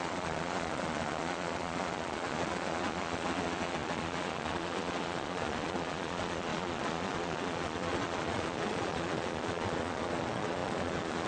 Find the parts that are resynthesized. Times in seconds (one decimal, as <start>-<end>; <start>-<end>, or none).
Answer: 0.0-11.3